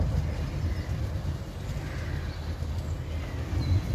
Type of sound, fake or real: real